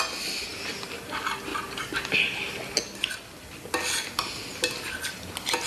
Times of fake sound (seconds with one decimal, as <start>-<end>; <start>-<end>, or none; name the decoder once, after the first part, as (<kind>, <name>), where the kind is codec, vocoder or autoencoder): none